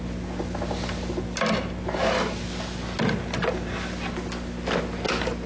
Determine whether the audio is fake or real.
real